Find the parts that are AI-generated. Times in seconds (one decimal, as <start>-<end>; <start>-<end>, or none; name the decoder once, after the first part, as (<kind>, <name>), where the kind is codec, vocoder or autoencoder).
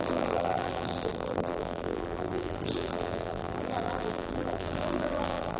0.0-5.6 (vocoder, BigVGAN v2)